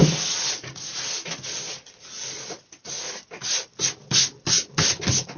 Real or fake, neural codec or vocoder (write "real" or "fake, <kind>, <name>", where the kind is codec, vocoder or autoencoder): real